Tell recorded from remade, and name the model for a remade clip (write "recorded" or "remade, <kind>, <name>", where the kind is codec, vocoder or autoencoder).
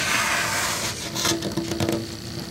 recorded